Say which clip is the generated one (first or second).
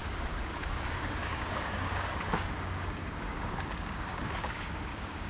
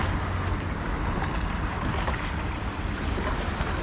first